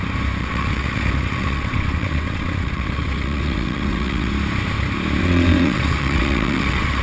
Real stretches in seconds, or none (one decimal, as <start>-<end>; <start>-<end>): 0.0-0.4; 4.3-5.2